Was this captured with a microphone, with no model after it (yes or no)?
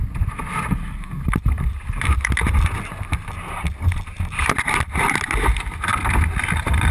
yes